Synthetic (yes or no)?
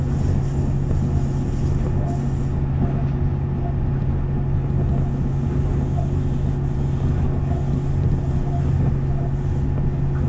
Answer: no